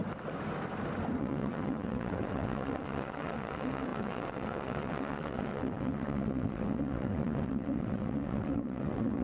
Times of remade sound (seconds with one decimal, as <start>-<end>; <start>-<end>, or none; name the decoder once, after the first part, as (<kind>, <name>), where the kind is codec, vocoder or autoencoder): 1.2-9.2 (vocoder, WaveNeXt)